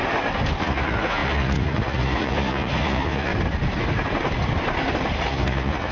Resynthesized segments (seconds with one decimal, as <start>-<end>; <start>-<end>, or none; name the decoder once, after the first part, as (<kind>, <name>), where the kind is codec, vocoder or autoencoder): 0.6-3.3 (vocoder, Vocos); 5.2-5.9